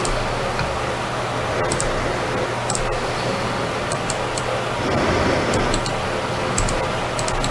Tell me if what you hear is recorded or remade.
recorded